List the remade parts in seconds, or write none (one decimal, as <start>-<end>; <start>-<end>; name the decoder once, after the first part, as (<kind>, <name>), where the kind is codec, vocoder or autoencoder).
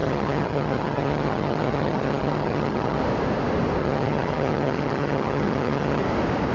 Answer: 0.0-3.0 (vocoder, HiFi-GAN); 3.8-6.0